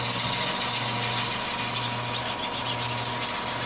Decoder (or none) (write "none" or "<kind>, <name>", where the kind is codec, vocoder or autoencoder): none